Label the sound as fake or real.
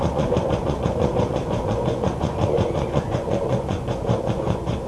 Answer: fake